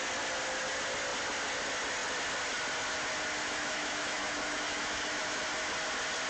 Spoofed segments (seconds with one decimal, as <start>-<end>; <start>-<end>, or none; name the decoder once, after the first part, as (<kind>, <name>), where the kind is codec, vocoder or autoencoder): 3.4-5.4 (autoencoder, DAC-VAE)